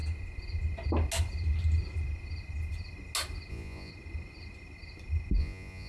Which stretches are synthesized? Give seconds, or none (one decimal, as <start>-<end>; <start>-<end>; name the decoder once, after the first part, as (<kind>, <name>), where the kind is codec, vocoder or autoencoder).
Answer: 3.5-3.9 (vocoder, Vocos); 5.4-5.9